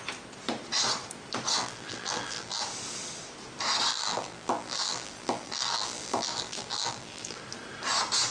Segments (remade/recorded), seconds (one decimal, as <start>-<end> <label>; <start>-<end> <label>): 0.0-1.6 recorded; 1.6-2.6 remade; 2.6-3.9 recorded; 3.9-7.4 remade; 7.4-8.3 recorded